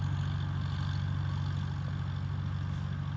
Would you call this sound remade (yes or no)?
no